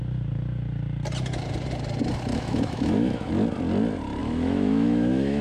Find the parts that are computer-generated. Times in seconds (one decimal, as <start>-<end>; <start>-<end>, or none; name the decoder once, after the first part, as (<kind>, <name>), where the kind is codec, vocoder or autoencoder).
2.3-3.3 (autoencoder, DAC-VAE); 4.2-5.4